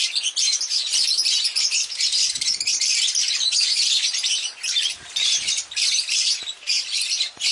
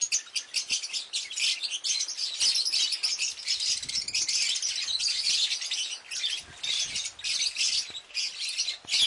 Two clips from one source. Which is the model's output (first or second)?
first